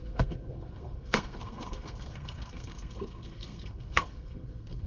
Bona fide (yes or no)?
no